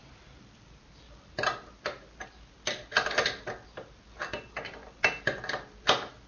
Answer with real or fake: real